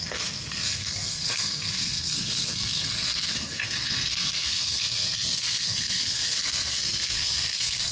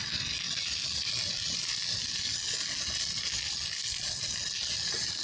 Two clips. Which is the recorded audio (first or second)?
second